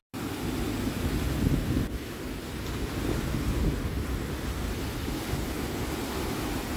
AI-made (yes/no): no